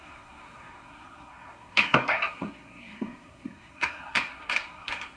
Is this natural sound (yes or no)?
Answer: no